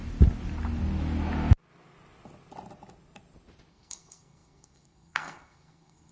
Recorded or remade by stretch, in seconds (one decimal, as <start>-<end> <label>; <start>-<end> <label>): 0.0-3.7 recorded; 3.7-6.1 remade